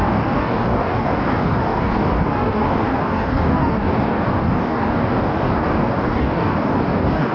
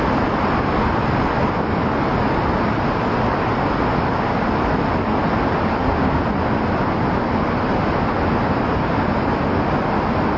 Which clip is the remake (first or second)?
first